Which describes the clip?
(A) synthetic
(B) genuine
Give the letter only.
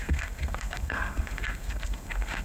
A